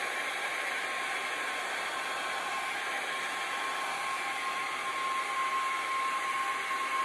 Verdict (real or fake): real